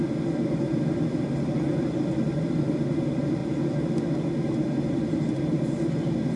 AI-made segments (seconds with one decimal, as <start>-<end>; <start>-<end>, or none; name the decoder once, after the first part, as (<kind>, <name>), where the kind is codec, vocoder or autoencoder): 0.0-3.4 (vocoder, BigVGAN v2); 5.1-6.4